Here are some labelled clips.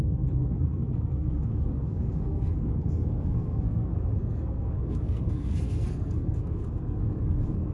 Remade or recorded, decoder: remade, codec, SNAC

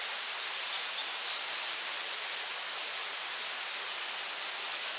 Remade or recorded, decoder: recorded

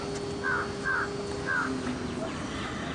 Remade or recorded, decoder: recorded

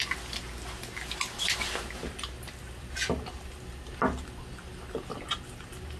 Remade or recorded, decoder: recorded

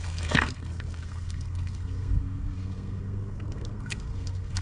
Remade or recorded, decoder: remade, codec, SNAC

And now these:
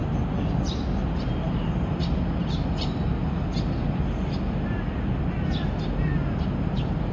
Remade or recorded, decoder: recorded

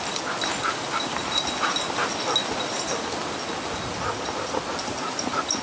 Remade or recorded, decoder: recorded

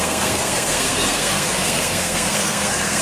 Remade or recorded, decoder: remade, codec, SNAC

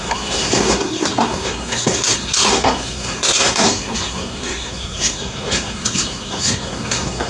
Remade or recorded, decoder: remade, codec, SNAC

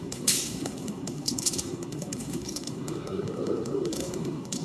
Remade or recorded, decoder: remade, codec, SNAC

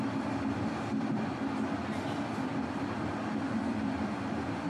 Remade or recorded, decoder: recorded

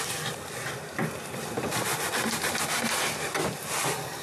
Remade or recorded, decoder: recorded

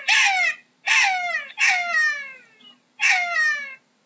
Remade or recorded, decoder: recorded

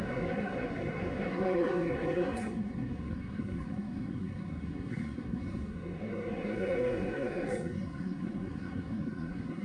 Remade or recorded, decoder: remade, codec, SNAC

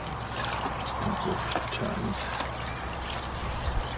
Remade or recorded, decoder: recorded